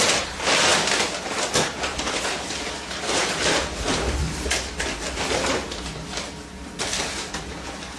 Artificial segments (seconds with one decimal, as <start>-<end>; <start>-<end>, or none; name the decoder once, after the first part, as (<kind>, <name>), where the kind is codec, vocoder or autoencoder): none